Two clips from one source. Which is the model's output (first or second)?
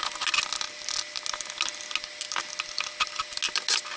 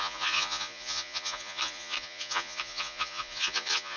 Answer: second